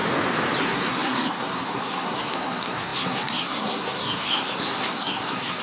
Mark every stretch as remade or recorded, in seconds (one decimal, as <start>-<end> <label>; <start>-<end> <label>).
0.0-0.6 recorded; 0.6-5.6 remade